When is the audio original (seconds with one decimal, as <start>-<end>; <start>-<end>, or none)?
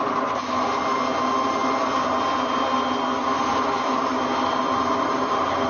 0.0-5.7